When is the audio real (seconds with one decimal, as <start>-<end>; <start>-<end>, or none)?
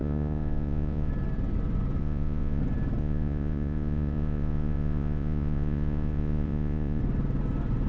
1.1-2.0; 2.6-3.0; 7.0-7.9